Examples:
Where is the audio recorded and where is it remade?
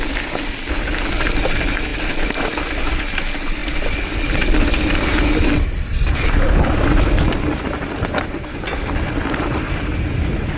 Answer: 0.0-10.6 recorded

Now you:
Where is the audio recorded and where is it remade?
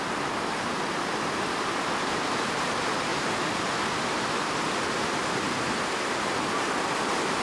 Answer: 0.0-3.1 remade; 3.1-4.4 recorded; 4.4-7.4 remade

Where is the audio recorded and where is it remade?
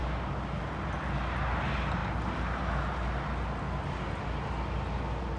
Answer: 0.0-5.4 recorded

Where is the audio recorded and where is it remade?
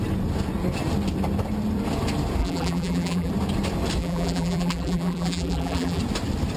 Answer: 0.0-2.4 recorded; 2.4-3.3 remade; 3.3-4.0 recorded; 4.0-6.0 remade; 6.0-6.6 recorded